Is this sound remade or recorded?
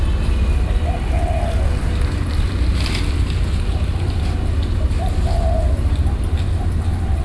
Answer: recorded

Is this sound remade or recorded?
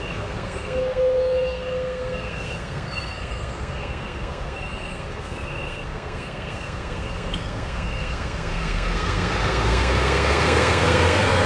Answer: remade